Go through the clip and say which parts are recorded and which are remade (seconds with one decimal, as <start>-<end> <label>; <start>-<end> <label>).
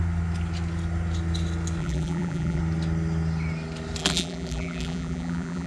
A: 0.0-1.8 recorded; 1.8-2.6 remade; 2.6-4.0 recorded; 4.0-5.7 remade